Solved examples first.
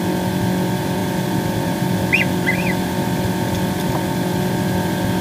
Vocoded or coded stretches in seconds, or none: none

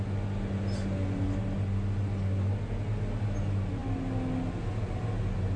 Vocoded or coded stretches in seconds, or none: none

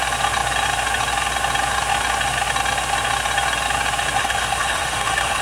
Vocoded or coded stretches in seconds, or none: 4.2-5.4 (autoencoder, DAC-VAE)